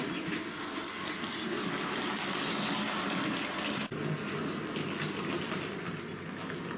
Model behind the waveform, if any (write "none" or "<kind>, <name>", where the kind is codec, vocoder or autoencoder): none